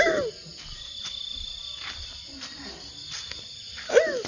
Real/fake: real